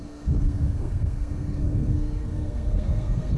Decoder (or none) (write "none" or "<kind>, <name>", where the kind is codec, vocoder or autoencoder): codec, SNAC